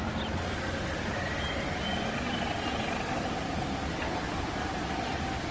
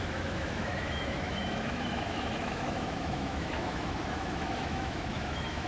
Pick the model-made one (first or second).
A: second